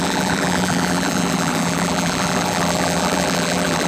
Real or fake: fake